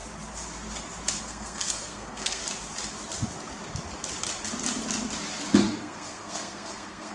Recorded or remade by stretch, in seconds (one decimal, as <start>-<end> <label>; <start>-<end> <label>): 0.0-1.2 recorded; 1.2-2.4 remade; 2.4-5.8 recorded; 5.8-7.1 remade